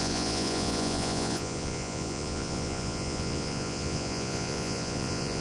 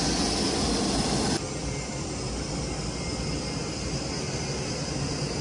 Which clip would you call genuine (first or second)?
second